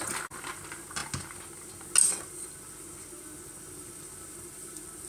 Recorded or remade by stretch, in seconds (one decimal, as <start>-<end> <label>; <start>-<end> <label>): 0.0-5.1 recorded